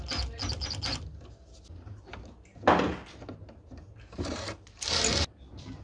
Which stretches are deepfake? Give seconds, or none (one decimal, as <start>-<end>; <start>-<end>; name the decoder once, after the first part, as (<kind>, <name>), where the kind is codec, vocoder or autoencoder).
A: none